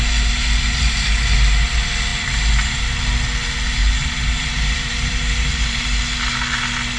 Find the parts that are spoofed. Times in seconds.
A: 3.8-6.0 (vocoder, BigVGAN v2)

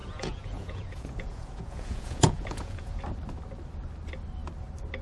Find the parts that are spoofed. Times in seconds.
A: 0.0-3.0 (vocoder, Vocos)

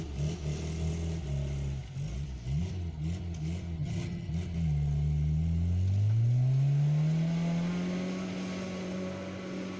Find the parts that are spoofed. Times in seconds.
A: 3.8-4.3 (vocoder, HiFi-GAN)